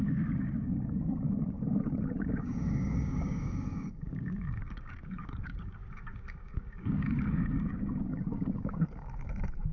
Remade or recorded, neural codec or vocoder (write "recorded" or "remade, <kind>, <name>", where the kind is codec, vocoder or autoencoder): remade, codec, DAC